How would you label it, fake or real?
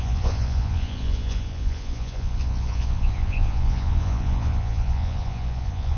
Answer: fake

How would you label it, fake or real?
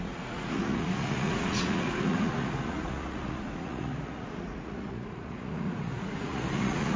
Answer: fake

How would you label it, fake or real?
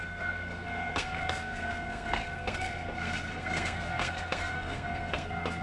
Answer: fake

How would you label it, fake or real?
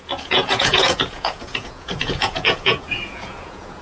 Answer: fake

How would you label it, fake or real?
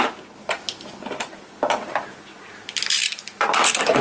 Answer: real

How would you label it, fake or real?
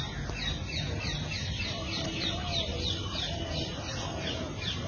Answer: real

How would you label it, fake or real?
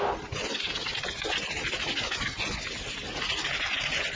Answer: real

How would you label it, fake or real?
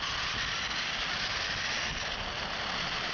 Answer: real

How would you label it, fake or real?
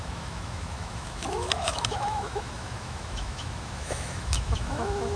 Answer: fake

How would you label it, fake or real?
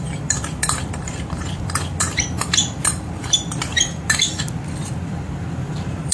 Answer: fake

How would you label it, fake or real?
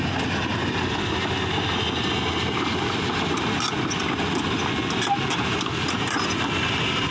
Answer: real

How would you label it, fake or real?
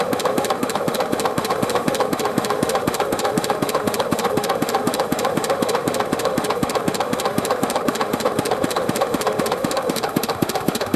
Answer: fake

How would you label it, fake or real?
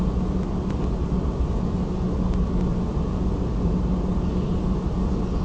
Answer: real